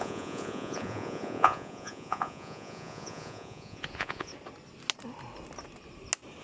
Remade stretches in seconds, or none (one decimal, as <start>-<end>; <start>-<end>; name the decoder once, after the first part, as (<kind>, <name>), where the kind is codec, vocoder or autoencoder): 0.0-4.3 (vocoder, Vocos)